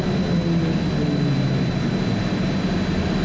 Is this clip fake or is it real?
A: real